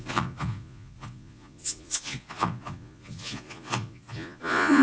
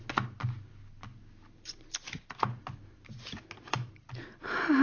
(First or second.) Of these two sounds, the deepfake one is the first